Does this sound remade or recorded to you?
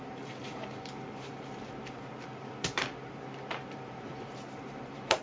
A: remade